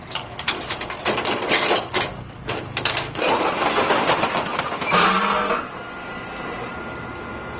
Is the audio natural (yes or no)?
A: yes